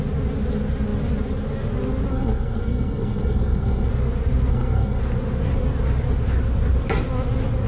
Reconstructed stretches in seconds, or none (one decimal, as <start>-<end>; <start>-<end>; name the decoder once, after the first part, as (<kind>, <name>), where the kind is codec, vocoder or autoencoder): 2.1-3.9 (codec, SNAC); 4.5-5.0